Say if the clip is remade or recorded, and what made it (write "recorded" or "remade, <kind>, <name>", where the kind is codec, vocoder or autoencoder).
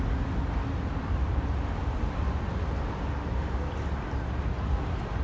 recorded